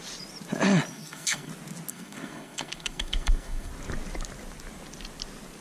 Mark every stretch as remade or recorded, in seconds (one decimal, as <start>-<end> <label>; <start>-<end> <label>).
0.0-0.9 recorded; 0.9-1.5 remade; 1.5-1.9 recorded; 1.9-3.7 remade; 3.7-5.6 recorded